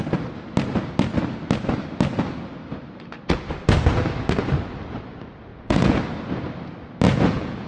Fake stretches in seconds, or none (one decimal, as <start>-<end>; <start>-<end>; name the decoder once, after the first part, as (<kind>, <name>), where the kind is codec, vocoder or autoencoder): 5.5-6.0 (vocoder, Vocos); 7.1-7.7